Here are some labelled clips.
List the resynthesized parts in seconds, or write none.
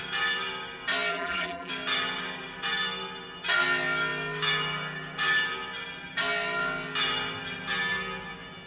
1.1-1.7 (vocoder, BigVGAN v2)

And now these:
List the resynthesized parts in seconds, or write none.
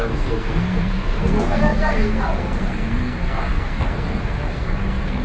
0.0-5.2 (codec, SNAC)